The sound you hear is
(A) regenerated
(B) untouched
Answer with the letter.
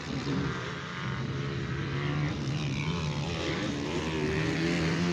B